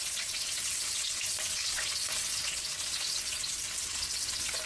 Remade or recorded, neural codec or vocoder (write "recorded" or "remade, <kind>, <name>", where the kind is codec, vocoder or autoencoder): remade, vocoder, WaveNeXt